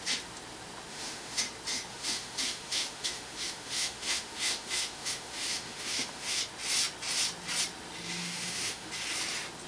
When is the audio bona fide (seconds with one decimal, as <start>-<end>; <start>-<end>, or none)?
0.0-0.9; 1.4-1.9; 6.4-8.2; 8.9-9.7